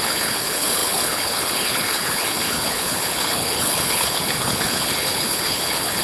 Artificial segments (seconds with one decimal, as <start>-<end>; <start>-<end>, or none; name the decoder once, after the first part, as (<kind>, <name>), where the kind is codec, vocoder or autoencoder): 0.0-6.0 (codec, HILCodec)